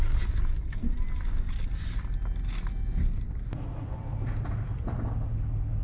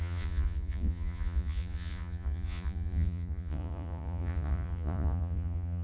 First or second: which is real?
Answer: first